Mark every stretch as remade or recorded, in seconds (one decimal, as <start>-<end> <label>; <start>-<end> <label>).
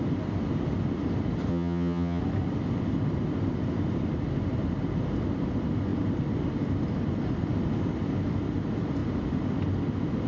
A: 0.0-1.5 recorded; 1.5-2.2 remade; 2.2-10.3 recorded